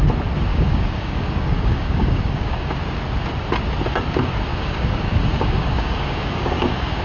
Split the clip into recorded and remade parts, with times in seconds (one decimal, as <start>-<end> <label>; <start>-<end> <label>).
0.0-0.5 recorded; 0.5-2.7 remade; 2.7-4.5 recorded; 4.5-7.0 remade